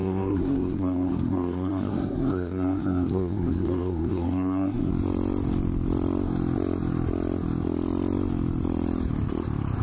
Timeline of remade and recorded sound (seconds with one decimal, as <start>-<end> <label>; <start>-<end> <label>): 0.0-4.9 remade; 4.9-9.8 recorded